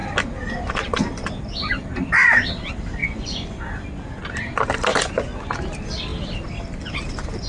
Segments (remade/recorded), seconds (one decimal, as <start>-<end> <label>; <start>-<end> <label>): 0.0-3.0 recorded; 3.0-3.7 remade; 3.7-4.9 recorded; 4.9-5.5 remade; 5.5-7.5 recorded